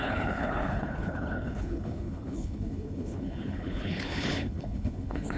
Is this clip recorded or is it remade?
remade